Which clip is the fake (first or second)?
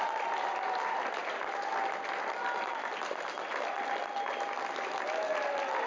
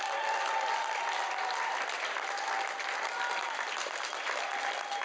second